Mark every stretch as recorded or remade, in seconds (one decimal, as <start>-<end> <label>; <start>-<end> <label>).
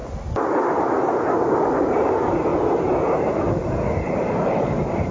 0.0-1.8 recorded; 1.8-2.5 remade; 2.5-3.1 recorded; 3.1-5.1 remade